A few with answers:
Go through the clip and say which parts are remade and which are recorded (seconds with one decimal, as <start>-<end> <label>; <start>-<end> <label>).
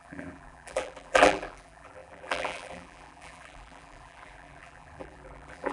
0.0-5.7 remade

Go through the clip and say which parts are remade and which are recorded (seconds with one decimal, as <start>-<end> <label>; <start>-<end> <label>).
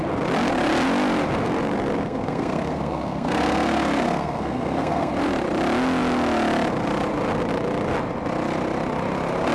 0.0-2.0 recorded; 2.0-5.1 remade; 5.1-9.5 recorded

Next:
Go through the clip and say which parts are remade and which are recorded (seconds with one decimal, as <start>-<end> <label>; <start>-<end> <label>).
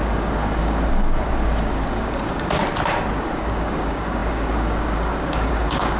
0.0-2.6 remade; 2.6-3.2 recorded; 3.2-6.0 remade